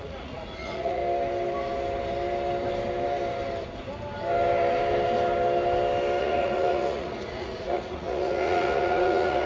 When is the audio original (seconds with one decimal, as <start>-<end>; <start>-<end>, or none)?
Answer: 1.0-6.2